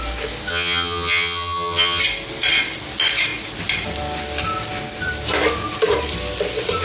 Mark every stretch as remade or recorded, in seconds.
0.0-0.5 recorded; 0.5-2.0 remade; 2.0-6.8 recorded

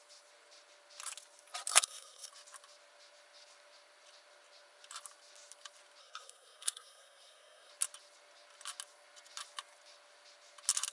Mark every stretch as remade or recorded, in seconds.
0.0-1.7 recorded; 1.7-2.3 remade; 2.3-6.0 recorded; 6.0-7.7 remade; 7.7-10.9 recorded

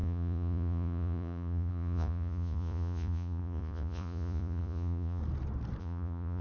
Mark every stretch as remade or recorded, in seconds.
0.0-5.2 remade; 5.2-5.8 recorded; 5.8-6.4 remade

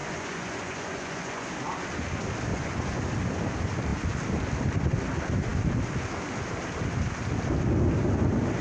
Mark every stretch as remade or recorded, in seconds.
0.0-1.5 remade; 1.5-2.5 recorded; 2.5-3.0 remade; 3.0-8.6 recorded

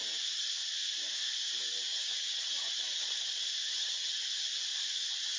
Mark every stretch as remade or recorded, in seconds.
0.0-1.9 recorded; 1.9-2.7 remade; 2.7-3.6 recorded; 3.6-4.2 remade; 4.2-5.4 recorded

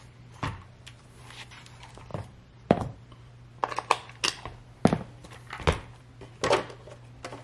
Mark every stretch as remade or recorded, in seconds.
0.0-2.1 recorded; 2.1-3.0 remade; 3.0-7.4 recorded

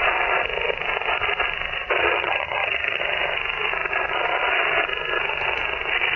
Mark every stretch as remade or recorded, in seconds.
0.0-2.0 recorded; 2.0-3.0 remade; 3.0-6.2 recorded

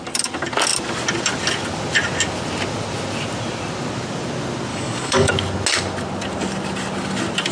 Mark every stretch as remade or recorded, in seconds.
0.0-4.7 recorded; 4.7-5.3 remade; 5.3-7.5 recorded